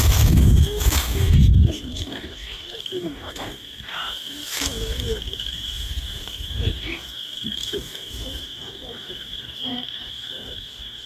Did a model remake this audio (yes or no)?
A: yes